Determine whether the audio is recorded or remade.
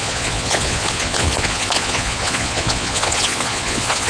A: remade